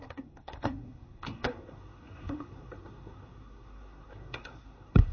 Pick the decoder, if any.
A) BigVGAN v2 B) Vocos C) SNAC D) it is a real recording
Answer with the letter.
C